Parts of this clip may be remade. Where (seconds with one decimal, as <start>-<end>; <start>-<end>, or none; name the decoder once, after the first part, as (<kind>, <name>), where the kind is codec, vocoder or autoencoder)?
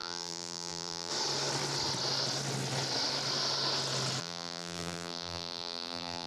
0.0-1.1 (vocoder, BigVGAN v2); 4.2-6.3